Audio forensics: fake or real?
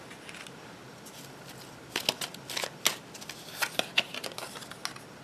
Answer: real